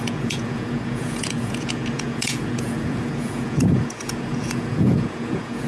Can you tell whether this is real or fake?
fake